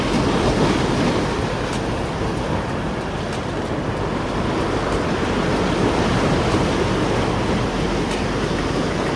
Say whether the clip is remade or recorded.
recorded